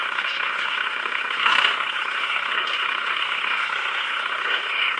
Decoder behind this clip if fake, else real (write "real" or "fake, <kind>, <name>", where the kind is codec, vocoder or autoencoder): fake, codec, SNAC